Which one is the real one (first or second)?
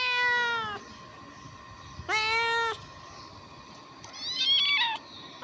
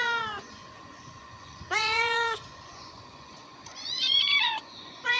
first